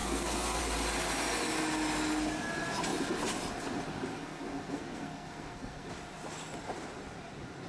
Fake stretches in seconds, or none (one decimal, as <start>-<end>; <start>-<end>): 0.0-0.6; 4.1-5.9